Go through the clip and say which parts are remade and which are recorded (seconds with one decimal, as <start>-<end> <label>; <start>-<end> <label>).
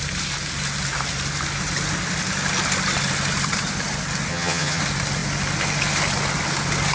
0.0-4.3 recorded; 4.3-4.8 remade; 4.8-6.9 recorded